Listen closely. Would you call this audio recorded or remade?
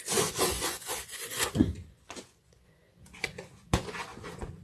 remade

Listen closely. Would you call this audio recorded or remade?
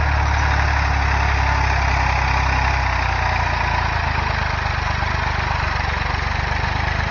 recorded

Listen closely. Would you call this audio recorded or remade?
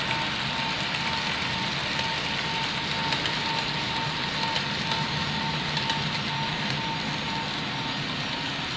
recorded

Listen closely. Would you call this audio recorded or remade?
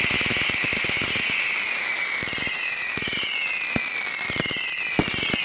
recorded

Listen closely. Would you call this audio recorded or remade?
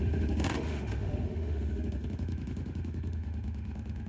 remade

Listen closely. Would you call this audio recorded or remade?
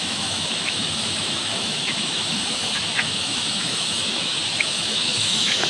remade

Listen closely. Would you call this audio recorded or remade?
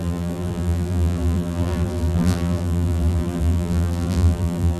remade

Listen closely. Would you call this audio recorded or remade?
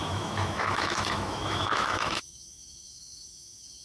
remade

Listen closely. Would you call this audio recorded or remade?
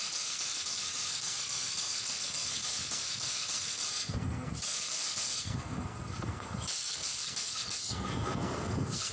remade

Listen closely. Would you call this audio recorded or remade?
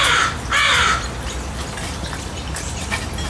recorded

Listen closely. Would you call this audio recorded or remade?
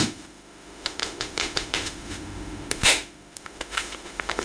remade